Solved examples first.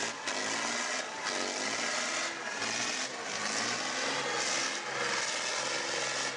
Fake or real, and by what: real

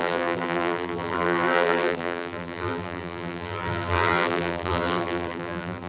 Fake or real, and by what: fake, vocoder, BigVGAN v2